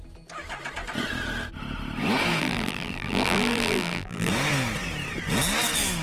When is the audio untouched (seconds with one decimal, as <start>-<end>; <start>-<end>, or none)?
0.0-2.4; 4.3-6.0